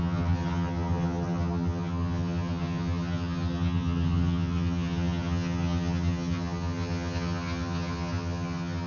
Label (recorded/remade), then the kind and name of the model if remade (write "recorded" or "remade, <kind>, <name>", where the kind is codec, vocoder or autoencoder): remade, vocoder, HiFi-GAN